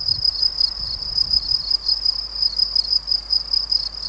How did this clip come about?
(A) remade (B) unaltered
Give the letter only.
B